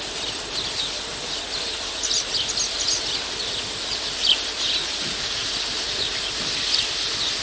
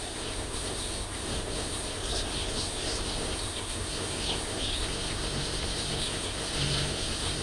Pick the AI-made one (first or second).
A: second